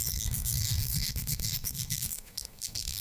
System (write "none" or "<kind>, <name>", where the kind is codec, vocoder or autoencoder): codec, SNAC